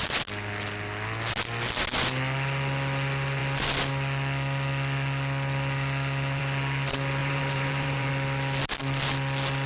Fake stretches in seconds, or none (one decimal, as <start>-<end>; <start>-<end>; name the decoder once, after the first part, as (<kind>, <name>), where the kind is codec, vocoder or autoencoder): 7.2-8.1 (vocoder, BigVGAN v2)